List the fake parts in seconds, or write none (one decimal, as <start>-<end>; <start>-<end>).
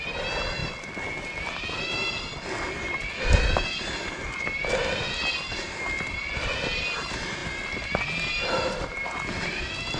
none